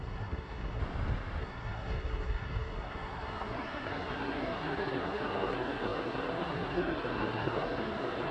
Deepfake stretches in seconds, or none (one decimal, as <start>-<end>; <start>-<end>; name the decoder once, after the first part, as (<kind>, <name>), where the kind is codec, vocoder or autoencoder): 0.0-0.8 (codec, SNAC); 1.4-8.3